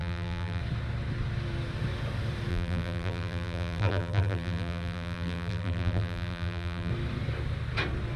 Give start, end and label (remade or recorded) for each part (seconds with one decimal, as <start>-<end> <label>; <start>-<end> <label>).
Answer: 0.0-0.6 remade; 0.6-2.5 recorded; 2.5-6.9 remade; 6.9-8.2 recorded